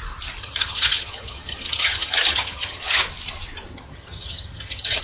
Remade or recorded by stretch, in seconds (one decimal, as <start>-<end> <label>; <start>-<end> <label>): 0.0-0.4 recorded; 0.4-3.0 remade; 3.0-3.7 recorded; 3.7-5.0 remade